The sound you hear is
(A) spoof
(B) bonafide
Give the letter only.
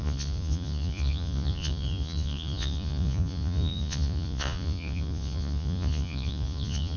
A